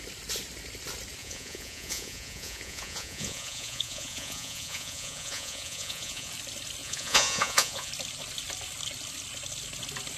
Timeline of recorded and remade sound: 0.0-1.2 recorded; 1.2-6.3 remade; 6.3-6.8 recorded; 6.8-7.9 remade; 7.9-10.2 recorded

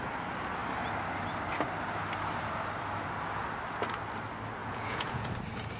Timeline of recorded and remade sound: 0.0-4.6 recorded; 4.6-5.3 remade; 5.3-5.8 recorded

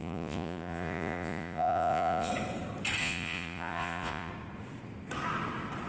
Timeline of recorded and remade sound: 0.0-2.3 remade; 2.3-3.0 recorded; 3.0-4.3 remade; 4.3-5.9 recorded

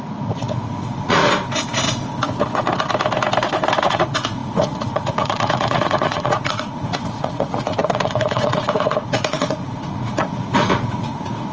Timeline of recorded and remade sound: 0.0-1.2 remade; 1.2-3.9 recorded; 3.9-11.5 remade

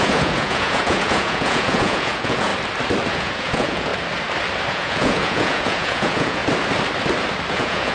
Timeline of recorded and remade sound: 0.0-2.5 remade; 2.5-3.1 recorded; 3.1-3.9 remade; 3.9-4.7 recorded; 4.7-6.4 remade; 6.4-7.5 recorded; 7.5-7.9 remade

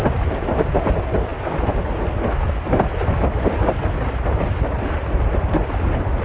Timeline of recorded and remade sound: 0.0-6.2 recorded

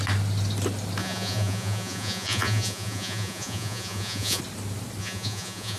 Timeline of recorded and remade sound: 0.0-1.0 recorded; 1.0-4.4 remade; 4.4-5.0 recorded; 5.0-5.8 remade

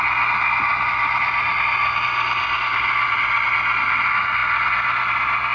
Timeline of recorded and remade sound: 0.0-5.5 recorded